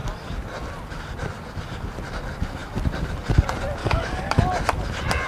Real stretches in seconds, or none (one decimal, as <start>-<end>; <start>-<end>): 0.0-3.8; 4.4-5.3